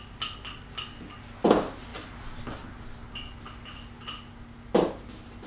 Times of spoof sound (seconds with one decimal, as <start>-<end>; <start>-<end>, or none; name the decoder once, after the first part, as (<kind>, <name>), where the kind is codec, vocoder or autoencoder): none